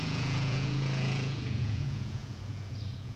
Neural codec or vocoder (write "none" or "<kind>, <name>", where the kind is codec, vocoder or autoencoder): vocoder, Vocos